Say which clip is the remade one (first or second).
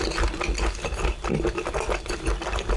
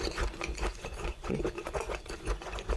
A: second